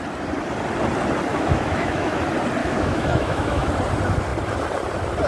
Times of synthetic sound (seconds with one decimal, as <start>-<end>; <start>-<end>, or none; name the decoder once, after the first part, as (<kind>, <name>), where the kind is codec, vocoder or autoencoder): 1.3-2.2 (autoencoder, DAC-VAE); 2.6-3.7